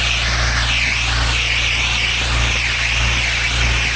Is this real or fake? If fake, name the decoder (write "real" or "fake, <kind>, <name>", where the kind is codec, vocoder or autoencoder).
real